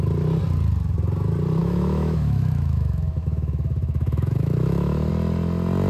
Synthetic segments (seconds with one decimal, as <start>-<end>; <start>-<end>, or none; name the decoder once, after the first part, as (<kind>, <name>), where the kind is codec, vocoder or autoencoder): 1.6-5.1 (autoencoder, DAC-VAE)